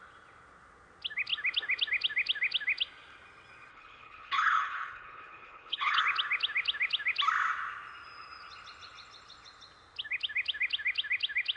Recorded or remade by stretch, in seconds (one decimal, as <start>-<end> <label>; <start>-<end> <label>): 0.0-3.7 recorded; 3.7-6.0 remade; 6.0-11.6 recorded